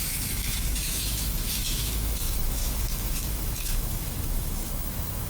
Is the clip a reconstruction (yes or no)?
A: yes